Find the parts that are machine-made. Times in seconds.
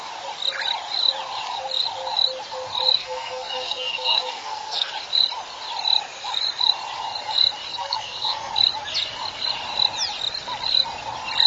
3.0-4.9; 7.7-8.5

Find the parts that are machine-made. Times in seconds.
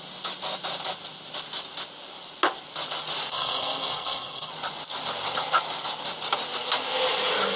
3.3-4.5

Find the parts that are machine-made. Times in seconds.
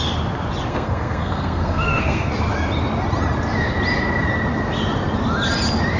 0.7-2.3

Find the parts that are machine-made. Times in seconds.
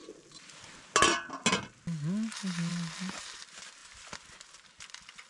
none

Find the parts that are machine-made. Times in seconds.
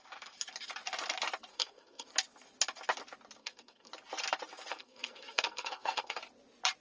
1.5-2.1; 3.4-3.9; 4.7-6.2